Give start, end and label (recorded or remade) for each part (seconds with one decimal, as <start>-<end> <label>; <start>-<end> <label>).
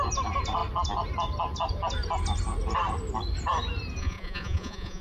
0.0-4.0 recorded; 4.0-5.0 remade